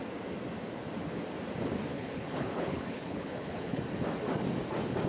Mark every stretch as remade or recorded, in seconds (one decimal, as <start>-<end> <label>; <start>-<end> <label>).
0.0-1.9 recorded; 1.9-3.8 remade; 3.8-5.1 recorded